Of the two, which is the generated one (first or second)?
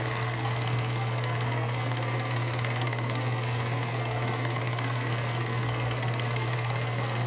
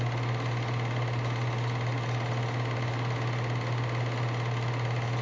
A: first